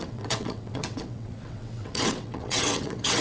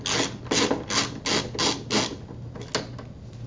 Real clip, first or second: second